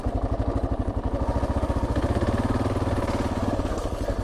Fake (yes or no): no